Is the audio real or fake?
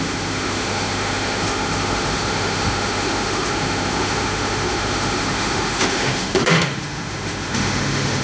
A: fake